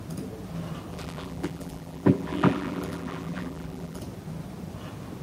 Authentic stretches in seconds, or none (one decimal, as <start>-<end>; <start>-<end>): 0.0-0.9; 4.0-5.2